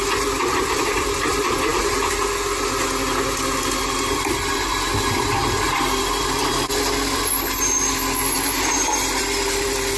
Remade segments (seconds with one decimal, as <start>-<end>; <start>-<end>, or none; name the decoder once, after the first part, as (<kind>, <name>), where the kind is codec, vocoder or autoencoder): 0.0-1.7 (vocoder, BigVGAN v2); 3.8-10.0